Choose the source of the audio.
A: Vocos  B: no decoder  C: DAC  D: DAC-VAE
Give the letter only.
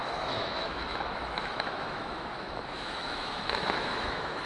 D